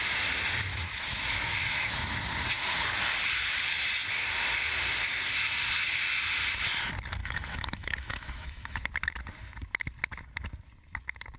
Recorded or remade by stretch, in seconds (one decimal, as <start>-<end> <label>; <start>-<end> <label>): 0.0-0.7 recorded; 0.7-2.1 remade; 2.1-7.2 recorded; 7.2-8.8 remade; 8.8-11.4 recorded